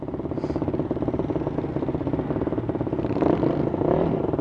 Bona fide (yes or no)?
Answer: yes